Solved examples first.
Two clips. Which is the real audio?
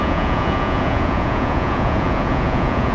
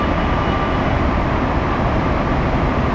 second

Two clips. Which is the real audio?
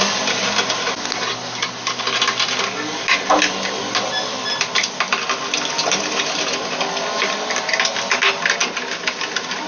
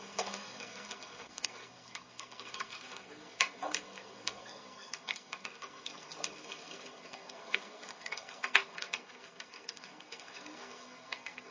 first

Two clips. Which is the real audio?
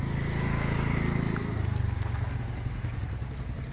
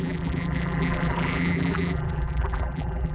first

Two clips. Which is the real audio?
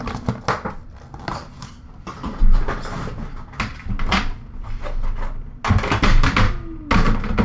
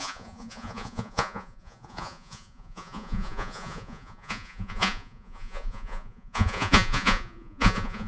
first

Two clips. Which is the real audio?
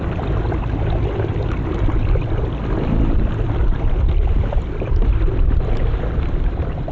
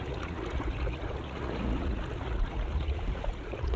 first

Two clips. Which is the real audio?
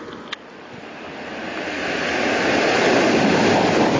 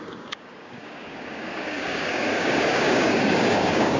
first